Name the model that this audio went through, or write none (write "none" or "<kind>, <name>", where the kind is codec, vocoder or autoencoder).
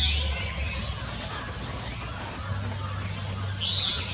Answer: none